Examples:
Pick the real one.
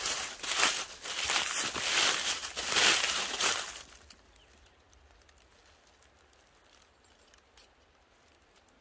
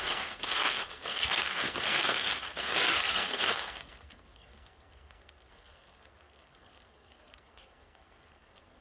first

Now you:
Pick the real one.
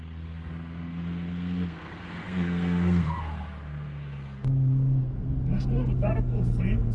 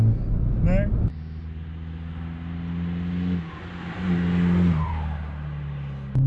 second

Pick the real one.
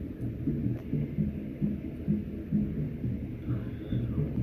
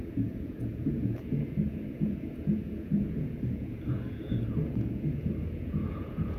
first